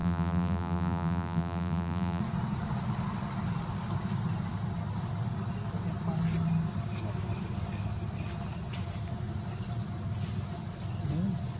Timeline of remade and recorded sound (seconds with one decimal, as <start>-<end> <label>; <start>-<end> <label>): 0.0-2.2 remade; 2.2-11.6 recorded